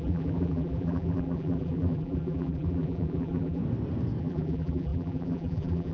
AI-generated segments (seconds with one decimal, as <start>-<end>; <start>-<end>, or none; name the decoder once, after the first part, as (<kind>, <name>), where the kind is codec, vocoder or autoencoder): 0.0-3.6 (vocoder, BigVGAN v2); 4.2-5.9